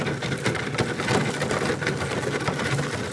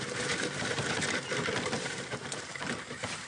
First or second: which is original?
first